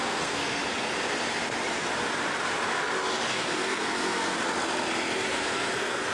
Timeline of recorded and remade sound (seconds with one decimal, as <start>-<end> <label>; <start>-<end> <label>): 0.0-0.6 remade; 0.6-3.3 recorded; 3.3-4.4 remade; 4.4-5.3 recorded; 5.3-6.1 remade